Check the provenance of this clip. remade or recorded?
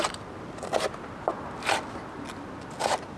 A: recorded